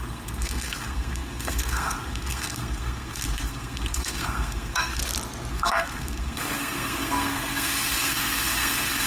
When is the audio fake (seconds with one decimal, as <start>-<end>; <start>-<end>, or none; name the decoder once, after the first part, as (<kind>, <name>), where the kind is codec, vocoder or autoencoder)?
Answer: 0.0-5.0 (codec, SNAC); 5.5-9.1